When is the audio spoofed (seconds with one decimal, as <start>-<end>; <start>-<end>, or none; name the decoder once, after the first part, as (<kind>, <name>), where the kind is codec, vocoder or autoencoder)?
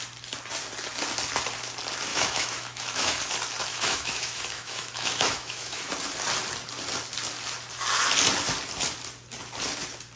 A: 2.1-3.2 (autoencoder, DAC-VAE); 3.7-5.9